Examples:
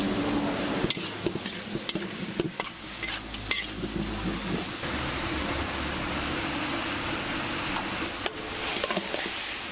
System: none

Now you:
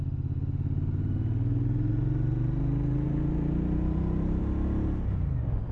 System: none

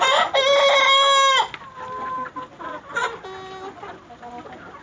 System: none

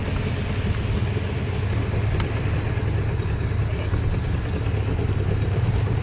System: none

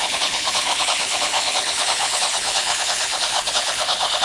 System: codec, HILCodec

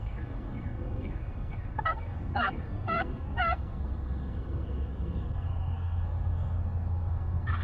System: codec, SNAC